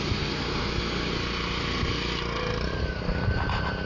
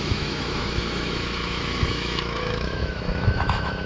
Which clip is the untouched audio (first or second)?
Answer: first